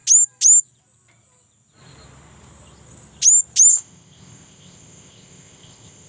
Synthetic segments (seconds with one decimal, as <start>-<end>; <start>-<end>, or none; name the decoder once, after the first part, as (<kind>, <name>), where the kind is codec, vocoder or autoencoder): 3.7-6.1 (codec, ZipCodec)